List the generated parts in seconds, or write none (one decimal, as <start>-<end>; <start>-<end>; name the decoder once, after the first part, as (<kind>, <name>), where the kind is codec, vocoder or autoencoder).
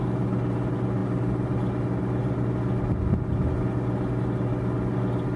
none